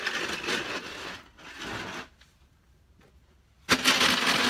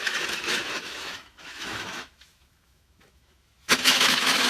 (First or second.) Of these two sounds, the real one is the first